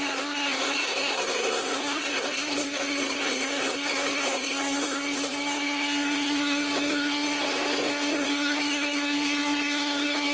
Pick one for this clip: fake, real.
fake